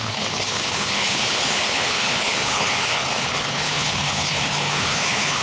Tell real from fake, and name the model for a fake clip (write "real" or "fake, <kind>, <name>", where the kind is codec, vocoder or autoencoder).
fake, codec, HILCodec